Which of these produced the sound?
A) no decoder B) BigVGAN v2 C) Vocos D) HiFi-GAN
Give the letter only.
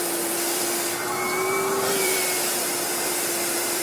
B